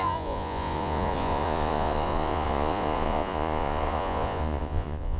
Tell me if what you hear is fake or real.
fake